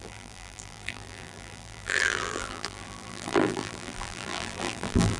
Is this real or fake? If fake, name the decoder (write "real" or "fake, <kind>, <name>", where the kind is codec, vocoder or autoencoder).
fake, vocoder, BigVGAN v2